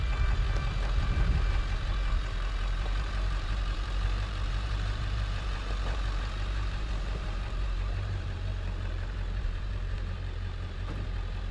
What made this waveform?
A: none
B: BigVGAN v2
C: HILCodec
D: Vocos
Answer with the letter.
B